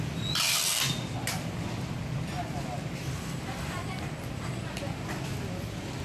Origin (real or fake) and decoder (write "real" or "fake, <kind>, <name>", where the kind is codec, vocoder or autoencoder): real